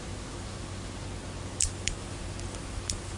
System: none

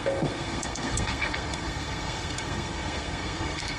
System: codec, SNAC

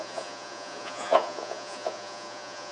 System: vocoder, Vocos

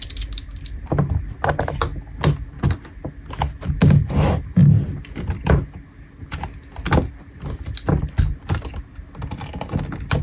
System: none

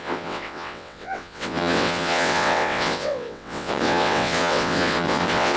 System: vocoder, WaveNeXt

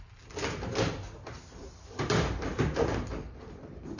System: none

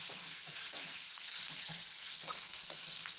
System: codec, SNAC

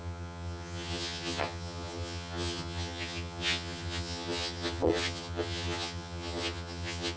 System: vocoder, HiFi-GAN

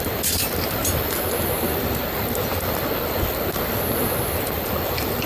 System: none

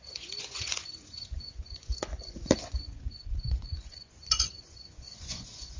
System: vocoder, Vocos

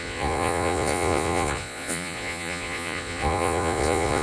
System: vocoder, Vocos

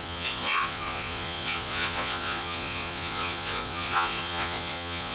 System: vocoder, Vocos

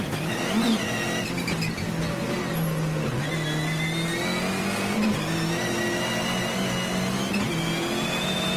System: none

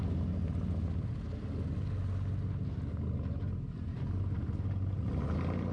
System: none